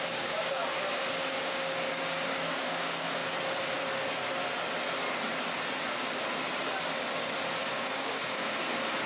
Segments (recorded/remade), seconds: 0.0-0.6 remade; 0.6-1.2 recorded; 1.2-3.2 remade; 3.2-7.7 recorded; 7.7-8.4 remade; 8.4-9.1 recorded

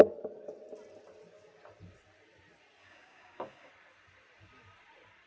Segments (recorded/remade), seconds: 0.0-2.8 recorded; 2.8-3.7 remade; 3.7-5.3 recorded

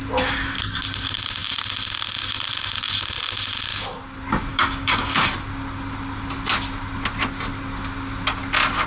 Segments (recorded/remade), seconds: 0.0-4.5 recorded; 4.5-5.3 remade; 5.3-8.9 recorded

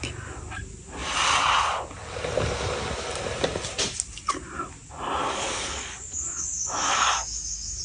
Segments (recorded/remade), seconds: 0.0-5.2 recorded; 5.2-7.8 remade